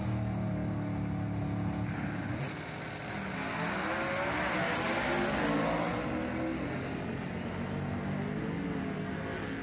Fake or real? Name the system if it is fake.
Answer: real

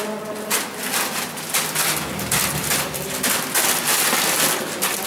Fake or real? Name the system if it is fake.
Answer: real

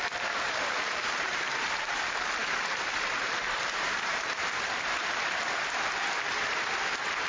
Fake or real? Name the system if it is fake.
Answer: fake, vocoder, BigVGAN v2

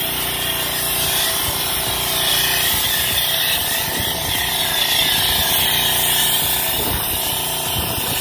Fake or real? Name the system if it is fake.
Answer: real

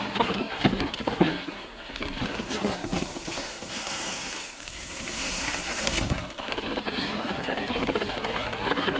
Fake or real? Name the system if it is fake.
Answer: fake, codec, SNAC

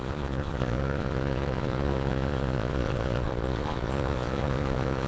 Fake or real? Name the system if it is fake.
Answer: fake, vocoder, Vocos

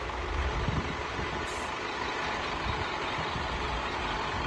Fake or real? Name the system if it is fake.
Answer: real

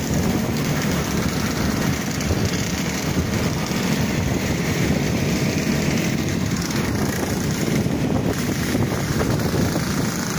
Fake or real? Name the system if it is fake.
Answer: fake, vocoder, BigVGAN v2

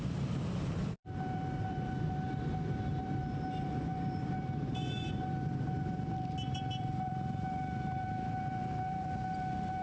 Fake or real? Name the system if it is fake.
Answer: fake, vocoder, BigVGAN v2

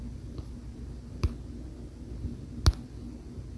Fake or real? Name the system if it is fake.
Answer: real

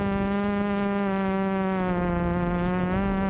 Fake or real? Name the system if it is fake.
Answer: real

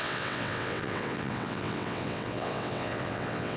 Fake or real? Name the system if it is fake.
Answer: fake, vocoder, WaveNeXt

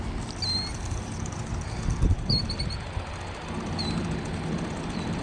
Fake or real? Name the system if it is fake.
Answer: real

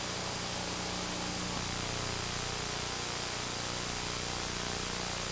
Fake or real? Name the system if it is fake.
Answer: real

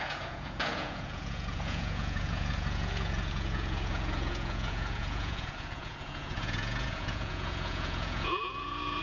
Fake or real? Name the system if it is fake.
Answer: fake, vocoder, Vocos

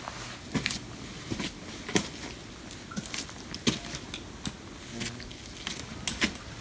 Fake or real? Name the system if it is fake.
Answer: real